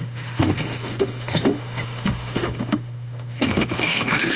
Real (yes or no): no